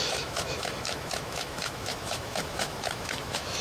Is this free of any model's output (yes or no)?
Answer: no